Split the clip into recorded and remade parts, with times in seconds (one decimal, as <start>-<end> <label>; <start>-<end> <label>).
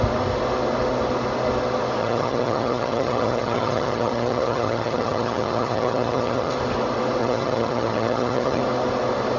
0.0-2.0 recorded; 2.0-6.5 remade; 6.5-7.2 recorded; 7.2-8.6 remade; 8.6-9.4 recorded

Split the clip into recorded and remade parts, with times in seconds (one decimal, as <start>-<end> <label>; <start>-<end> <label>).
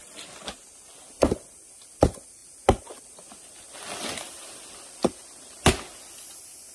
0.0-6.7 recorded